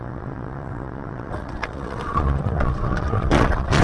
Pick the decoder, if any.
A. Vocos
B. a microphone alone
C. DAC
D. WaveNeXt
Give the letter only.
D